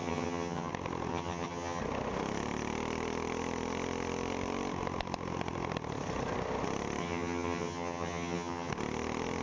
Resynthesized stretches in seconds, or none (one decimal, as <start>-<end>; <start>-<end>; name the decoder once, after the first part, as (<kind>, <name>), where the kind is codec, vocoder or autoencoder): 0.0-0.7 (vocoder, HiFi-GAN); 1.1-1.8; 7.0-8.7